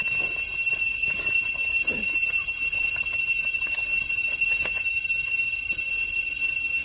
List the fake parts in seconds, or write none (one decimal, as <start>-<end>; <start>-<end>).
none